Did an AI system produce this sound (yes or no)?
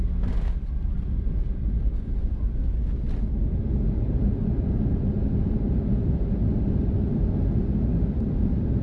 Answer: no